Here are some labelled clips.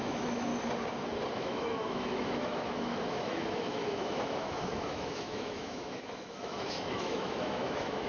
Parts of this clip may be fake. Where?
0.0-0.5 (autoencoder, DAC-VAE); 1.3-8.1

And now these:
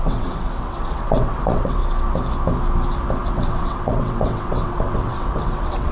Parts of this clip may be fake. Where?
0.0-1.8 (vocoder, WaveNeXt); 3.2-5.9

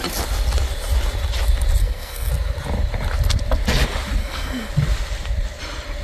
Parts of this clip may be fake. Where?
1.8-2.3 (codec, SNAC); 4.2-4.7